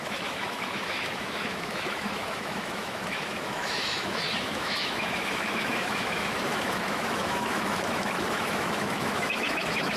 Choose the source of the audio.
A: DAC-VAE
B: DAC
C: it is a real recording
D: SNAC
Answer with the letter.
A